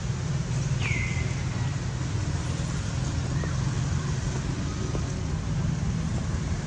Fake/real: real